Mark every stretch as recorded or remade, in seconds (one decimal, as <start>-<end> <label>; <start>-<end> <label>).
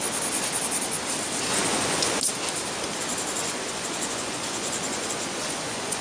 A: 0.0-1.5 recorded; 1.5-2.2 remade; 2.2-3.4 recorded; 3.4-6.0 remade